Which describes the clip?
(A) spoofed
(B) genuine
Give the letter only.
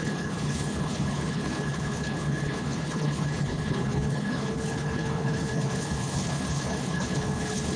A